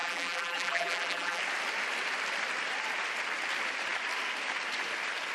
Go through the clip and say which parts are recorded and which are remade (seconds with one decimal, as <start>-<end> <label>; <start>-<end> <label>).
0.0-1.4 remade; 1.4-5.3 recorded